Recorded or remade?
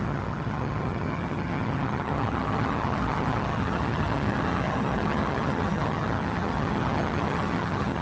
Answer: remade